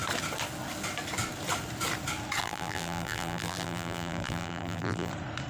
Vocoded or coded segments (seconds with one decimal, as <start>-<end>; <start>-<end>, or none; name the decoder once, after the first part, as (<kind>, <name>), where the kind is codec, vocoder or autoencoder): 2.4-5.1 (vocoder, BigVGAN v2)